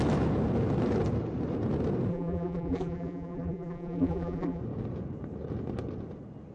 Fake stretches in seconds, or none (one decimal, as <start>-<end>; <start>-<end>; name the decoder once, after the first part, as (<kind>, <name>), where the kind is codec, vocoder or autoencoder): 2.1-4.6 (vocoder, BigVGAN v2)